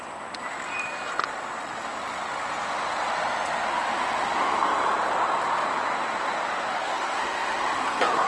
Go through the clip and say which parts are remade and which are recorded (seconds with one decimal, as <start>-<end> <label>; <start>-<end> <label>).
0.0-6.7 recorded; 6.7-8.3 remade